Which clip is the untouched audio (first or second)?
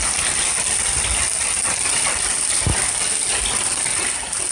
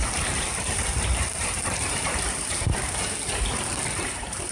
first